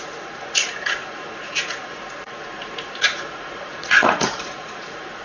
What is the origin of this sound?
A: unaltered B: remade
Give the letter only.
B